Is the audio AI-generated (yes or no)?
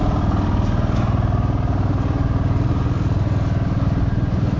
no